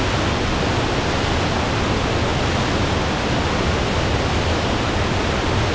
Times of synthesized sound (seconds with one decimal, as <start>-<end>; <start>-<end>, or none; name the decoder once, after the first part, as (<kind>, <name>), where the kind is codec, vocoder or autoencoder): none